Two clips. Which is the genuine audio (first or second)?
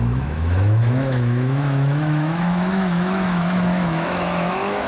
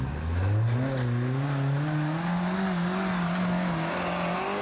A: second